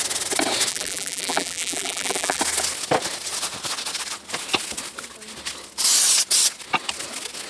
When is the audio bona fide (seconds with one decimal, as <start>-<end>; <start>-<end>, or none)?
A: 0.0-0.7; 2.4-7.5

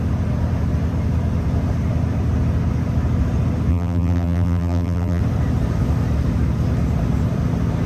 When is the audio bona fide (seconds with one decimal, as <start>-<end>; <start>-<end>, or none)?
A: 0.0-3.7; 5.2-7.9

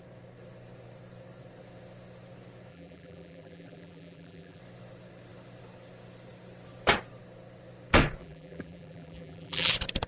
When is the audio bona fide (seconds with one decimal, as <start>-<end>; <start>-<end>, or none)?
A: 0.0-2.7; 4.6-8.2; 9.7-10.1

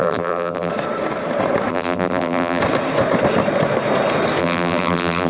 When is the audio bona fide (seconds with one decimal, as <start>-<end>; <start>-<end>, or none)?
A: 0.7-1.7; 2.6-4.4

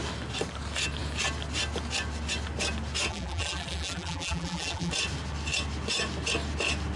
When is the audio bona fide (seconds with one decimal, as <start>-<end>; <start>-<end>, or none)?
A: 0.0-3.1; 4.9-7.0

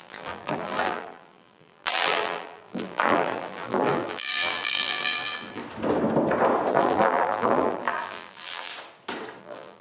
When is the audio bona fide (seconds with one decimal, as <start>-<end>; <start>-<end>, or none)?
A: 5.6-6.7; 8.7-9.4

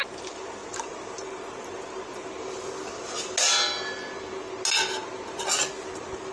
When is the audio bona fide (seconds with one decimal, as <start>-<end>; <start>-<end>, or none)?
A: 0.0-0.6; 1.4-2.1; 2.7-6.3